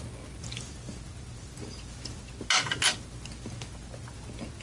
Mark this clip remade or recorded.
recorded